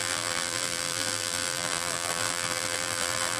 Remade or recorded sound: remade